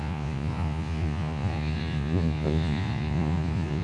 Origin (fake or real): fake